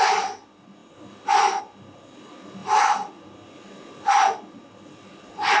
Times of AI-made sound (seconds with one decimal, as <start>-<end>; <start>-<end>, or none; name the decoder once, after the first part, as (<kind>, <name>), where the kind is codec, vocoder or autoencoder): none